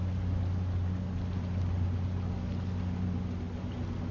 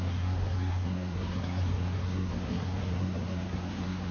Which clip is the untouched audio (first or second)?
first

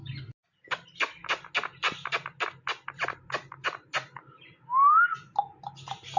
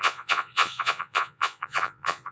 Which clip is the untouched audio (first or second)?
first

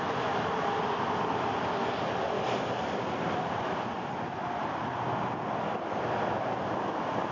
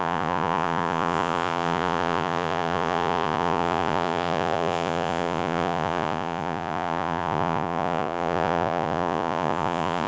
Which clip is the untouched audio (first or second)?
first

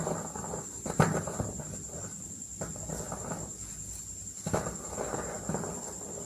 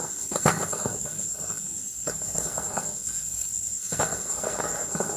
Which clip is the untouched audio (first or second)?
first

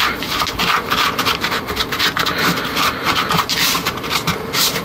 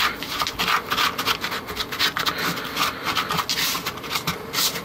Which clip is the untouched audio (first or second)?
second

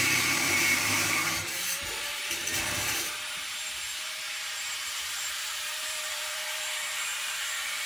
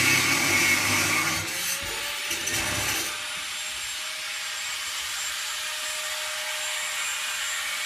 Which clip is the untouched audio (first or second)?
second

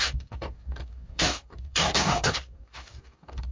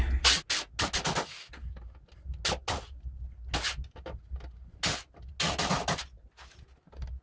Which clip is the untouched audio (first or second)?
second